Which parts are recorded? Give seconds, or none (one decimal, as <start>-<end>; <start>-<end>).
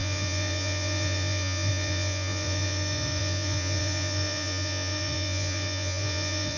none